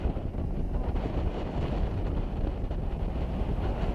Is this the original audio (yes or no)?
yes